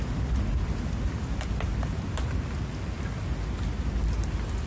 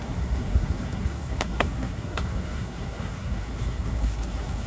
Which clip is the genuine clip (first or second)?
first